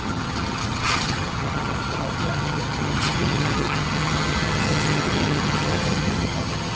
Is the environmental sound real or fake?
fake